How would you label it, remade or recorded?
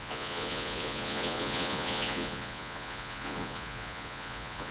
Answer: remade